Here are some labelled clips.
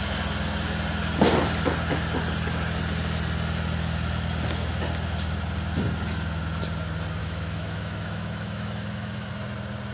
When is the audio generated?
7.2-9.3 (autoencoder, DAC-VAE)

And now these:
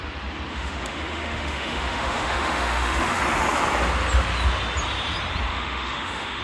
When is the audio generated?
0.5-3.2 (autoencoder, DAC-VAE); 5.5-6.4

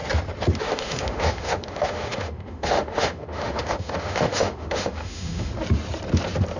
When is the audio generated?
0.6-5.5 (autoencoder, DAC-VAE)